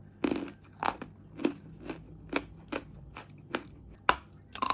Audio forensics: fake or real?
real